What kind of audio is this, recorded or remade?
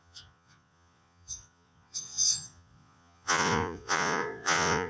remade